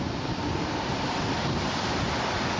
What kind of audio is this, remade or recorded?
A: recorded